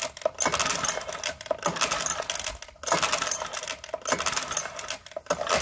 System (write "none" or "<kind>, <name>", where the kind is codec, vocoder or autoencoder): none